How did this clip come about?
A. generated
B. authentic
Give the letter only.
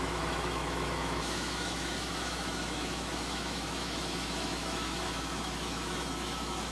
A